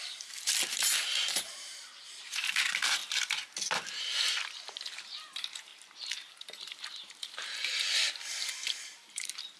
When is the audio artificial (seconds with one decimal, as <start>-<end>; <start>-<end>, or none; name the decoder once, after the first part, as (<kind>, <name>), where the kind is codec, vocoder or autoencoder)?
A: 0.0-3.0 (vocoder, BigVGAN v2); 5.0-5.7; 6.3-9.6